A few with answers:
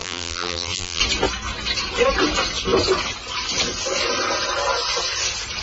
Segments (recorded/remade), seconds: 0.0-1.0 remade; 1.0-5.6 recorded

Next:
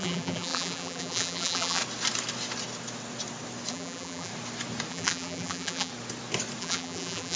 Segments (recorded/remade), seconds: 0.0-1.8 remade; 1.8-3.7 recorded; 3.7-4.3 remade; 4.3-4.9 recorded; 4.9-5.9 remade; 5.9-6.6 recorded; 6.6-7.4 remade

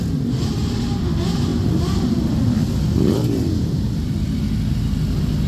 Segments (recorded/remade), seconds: 0.0-1.5 recorded; 1.5-4.4 remade; 4.4-5.5 recorded

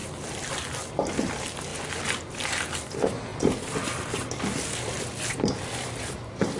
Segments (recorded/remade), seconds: 0.0-0.9 recorded; 0.9-1.7 remade; 1.7-2.3 recorded; 2.3-6.6 remade

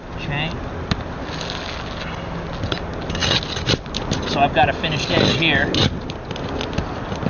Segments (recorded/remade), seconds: 0.0-7.3 recorded